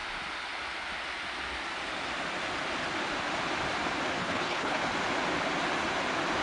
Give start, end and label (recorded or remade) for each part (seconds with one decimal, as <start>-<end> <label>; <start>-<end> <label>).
0.0-4.2 recorded; 4.2-4.8 remade; 4.8-6.4 recorded